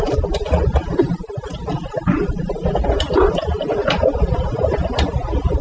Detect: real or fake real